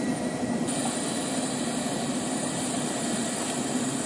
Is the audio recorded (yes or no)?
no